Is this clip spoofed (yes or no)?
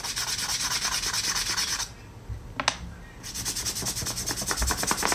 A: no